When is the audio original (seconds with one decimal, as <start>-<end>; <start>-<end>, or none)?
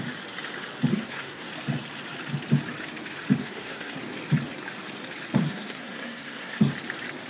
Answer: 0.0-0.9; 1.5-3.4; 4.0-5.4; 6.7-7.3